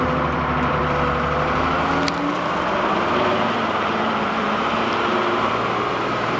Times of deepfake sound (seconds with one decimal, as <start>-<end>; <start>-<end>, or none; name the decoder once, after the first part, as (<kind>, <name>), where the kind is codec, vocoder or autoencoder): 0.0-0.8 (vocoder, BigVGAN v2); 2.3-6.4